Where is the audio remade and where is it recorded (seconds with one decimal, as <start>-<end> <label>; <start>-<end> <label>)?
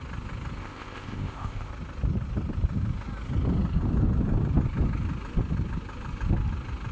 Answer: 0.0-0.6 recorded; 0.6-1.7 remade; 1.7-6.9 recorded